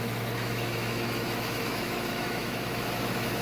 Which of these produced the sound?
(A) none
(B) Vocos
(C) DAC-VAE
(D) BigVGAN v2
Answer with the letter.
C